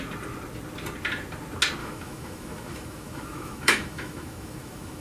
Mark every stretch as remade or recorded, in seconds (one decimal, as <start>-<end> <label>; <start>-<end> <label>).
0.0-1.8 recorded; 1.8-5.0 remade